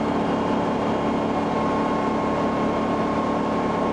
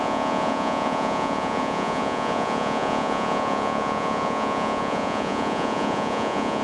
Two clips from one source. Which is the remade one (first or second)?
second